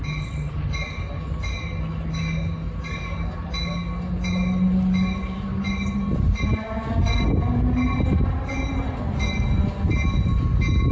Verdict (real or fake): real